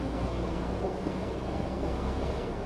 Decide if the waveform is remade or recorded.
remade